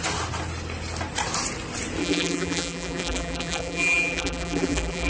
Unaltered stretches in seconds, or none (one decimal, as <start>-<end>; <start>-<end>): 0.0-2.0